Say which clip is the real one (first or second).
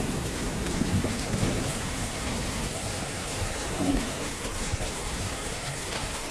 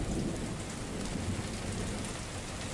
second